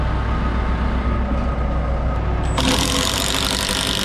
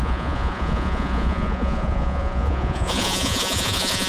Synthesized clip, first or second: second